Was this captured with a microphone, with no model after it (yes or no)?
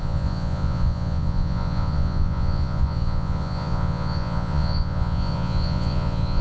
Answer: no